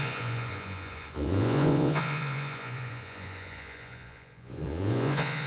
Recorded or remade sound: remade